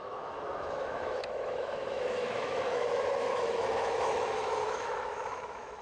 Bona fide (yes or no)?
no